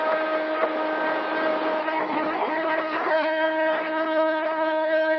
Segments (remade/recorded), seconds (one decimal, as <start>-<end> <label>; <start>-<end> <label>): 0.0-1.8 recorded; 1.8-5.2 remade